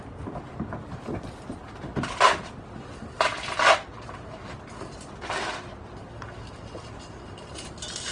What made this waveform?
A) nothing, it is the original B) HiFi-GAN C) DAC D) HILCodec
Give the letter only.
A